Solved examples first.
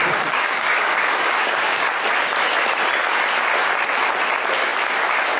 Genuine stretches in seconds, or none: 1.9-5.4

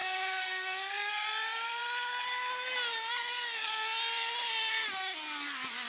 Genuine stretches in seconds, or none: 1.1-5.9

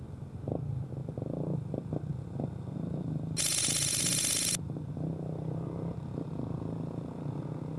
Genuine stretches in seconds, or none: 0.0-7.8

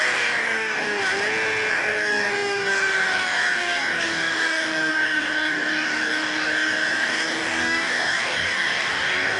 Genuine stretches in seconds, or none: 1.0-1.7

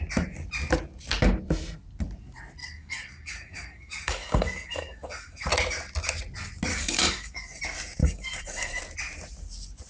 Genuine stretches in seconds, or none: 0.0-2.6; 5.5-6.7; 7.6-8.0; 8.8-9.9

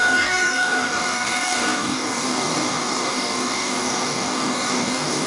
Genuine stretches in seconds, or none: none

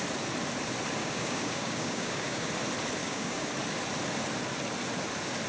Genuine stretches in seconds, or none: 0.0-1.0; 2.5-3.0; 3.5-5.5